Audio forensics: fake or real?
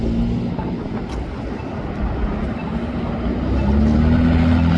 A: real